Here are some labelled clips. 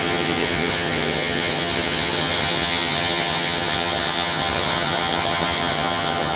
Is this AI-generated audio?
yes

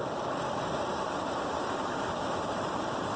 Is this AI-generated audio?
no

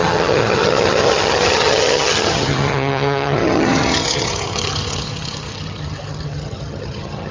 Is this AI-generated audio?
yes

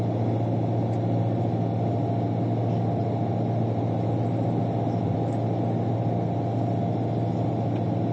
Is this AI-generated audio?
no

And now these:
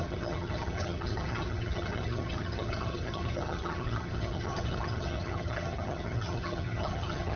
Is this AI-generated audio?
yes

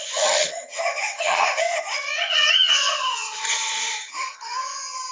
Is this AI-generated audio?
yes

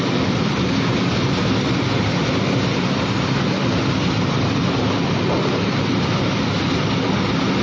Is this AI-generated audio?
no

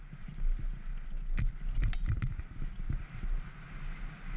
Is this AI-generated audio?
no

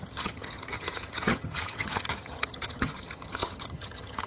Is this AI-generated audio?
yes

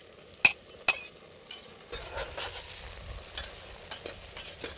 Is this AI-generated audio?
no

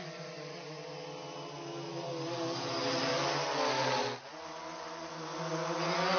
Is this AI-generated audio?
no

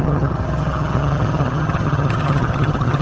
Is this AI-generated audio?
yes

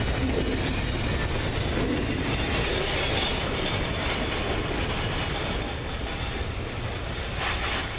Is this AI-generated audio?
no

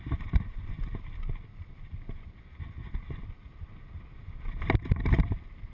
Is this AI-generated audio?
no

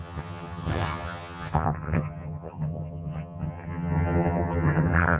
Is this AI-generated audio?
yes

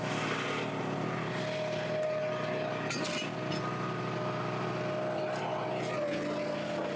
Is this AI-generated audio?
no